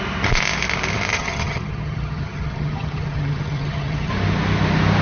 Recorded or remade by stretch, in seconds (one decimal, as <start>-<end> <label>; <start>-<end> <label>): 0.0-1.1 recorded; 1.1-4.1 remade; 4.1-5.0 recorded